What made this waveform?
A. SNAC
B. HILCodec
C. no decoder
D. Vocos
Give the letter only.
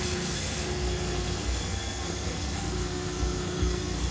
A